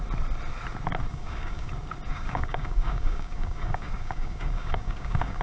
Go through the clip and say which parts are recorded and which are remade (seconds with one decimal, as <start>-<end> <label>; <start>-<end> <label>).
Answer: 0.0-1.1 recorded; 1.1-1.7 remade; 1.7-2.1 recorded; 2.1-5.4 remade